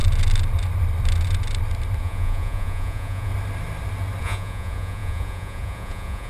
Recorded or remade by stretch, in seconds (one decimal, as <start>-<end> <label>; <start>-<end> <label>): 0.0-2.0 recorded; 2.0-3.3 remade; 3.3-4.2 recorded; 4.2-6.3 remade